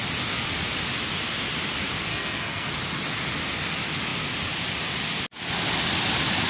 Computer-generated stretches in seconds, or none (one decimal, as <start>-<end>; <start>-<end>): 2.1-2.7